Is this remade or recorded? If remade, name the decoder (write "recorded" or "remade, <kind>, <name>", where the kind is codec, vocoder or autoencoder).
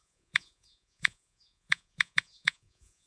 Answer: remade, vocoder, Vocos